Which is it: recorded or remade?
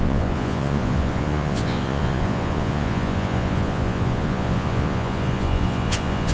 remade